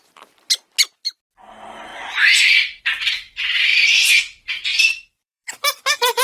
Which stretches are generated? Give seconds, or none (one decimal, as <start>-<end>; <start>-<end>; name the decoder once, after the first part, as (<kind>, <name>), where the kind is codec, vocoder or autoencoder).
3.7-4.2 (vocoder, BigVGAN v2); 4.7-5.5